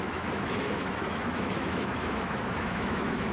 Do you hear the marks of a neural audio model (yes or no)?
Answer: yes